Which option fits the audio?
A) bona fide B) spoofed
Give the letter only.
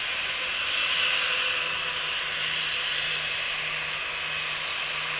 A